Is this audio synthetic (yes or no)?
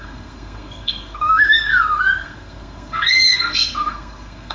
yes